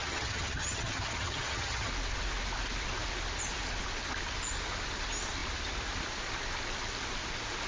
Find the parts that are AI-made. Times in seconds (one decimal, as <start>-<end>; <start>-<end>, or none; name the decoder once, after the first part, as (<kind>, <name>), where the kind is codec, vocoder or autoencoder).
0.0-1.9 (vocoder, HiFi-GAN)